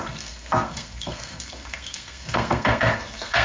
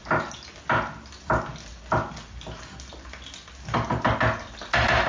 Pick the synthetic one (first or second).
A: first